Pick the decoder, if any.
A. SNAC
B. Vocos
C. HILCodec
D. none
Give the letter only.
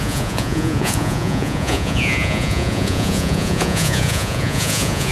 B